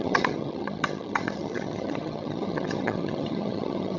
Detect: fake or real fake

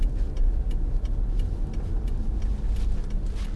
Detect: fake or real real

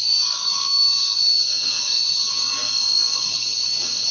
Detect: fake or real fake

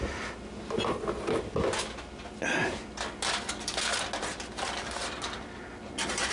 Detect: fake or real real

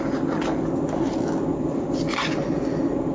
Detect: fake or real real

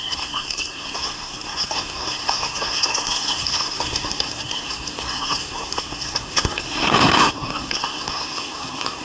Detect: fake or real fake